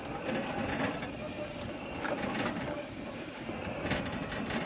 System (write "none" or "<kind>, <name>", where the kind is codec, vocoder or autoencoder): none